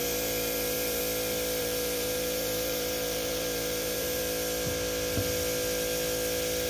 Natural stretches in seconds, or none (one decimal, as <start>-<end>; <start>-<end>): 1.0-1.6; 4.2-6.7

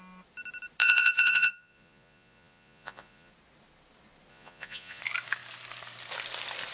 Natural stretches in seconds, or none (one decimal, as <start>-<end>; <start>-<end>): 0.0-0.8; 3.3-4.3; 5.0-6.7

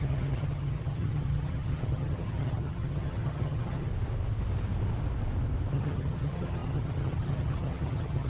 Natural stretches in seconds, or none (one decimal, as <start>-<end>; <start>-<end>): 3.9-5.7

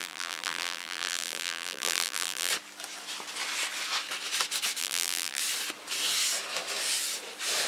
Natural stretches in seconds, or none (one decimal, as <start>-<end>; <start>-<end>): 2.5-4.8; 5.4-7.7

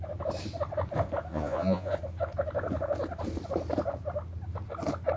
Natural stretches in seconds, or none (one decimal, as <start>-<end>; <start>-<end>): 0.0-1.3; 1.9-5.2

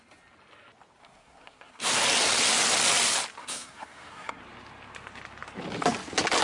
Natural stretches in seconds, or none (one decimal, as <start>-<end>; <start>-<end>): 0.0-1.0; 1.9-3.4; 4.4-6.4

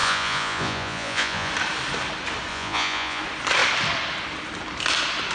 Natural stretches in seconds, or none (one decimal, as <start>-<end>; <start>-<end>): 1.5-2.5; 3.2-5.3